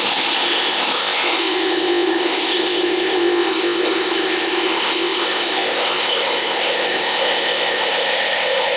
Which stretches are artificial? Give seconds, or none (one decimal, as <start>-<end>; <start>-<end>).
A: 0.0-8.8